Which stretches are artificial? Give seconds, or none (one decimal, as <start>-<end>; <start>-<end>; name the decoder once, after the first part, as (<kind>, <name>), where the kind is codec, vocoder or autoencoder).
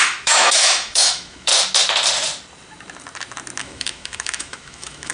0.0-1.5 (autoencoder, DAC-VAE); 3.6-5.1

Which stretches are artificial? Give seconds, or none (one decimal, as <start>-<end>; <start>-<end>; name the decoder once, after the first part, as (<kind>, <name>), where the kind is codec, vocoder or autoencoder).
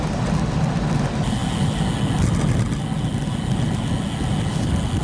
none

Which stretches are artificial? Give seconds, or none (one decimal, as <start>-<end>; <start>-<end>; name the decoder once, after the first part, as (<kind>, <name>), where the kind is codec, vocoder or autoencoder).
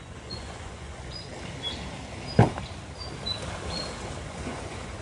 0.0-1.3 (vocoder, Vocos); 4.3-5.0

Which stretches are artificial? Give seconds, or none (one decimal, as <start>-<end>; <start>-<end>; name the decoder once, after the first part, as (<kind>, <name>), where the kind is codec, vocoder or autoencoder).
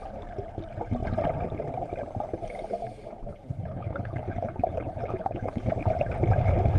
3.3-5.7 (codec, HILCodec)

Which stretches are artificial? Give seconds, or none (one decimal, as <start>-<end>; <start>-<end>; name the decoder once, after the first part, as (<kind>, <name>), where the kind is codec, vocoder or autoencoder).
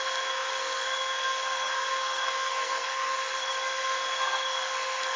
0.0-5.2 (codec, SNAC)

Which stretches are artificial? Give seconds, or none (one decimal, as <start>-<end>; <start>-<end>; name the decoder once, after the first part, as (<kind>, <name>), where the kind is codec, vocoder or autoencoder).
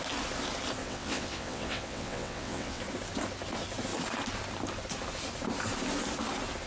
0.8-2.8 (vocoder, WaveNeXt)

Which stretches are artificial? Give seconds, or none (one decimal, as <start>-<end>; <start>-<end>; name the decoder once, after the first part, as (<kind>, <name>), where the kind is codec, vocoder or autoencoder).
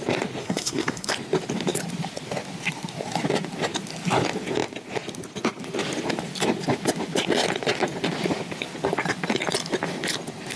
0.4-1.1 (codec, SNAC)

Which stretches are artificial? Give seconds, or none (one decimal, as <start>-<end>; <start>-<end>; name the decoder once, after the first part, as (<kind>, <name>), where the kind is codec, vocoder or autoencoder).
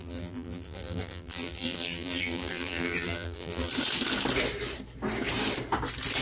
0.0-3.7 (vocoder, BigVGAN v2)